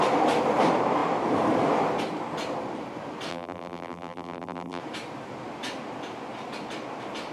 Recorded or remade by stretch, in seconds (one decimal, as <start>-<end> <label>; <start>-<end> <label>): 0.0-3.3 recorded; 3.3-4.8 remade; 4.8-7.3 recorded